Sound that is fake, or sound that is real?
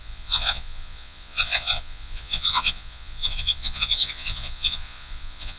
fake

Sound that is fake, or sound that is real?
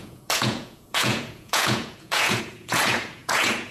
fake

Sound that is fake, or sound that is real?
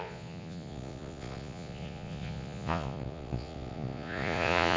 fake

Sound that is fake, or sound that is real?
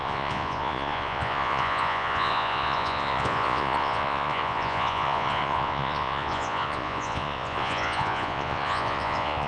fake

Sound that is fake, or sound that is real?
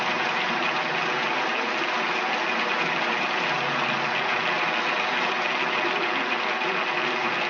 real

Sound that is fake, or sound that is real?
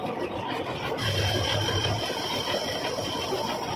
real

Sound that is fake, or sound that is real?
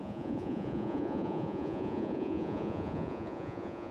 fake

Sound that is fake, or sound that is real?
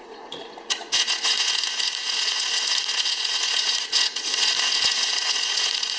fake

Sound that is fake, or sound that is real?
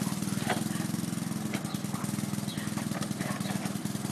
real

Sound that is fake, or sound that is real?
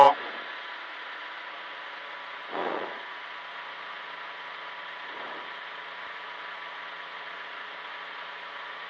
fake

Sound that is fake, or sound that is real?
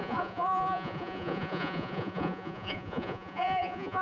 fake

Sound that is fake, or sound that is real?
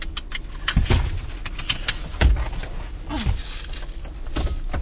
real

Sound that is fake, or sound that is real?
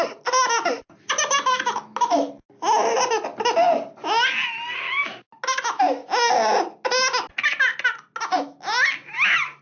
real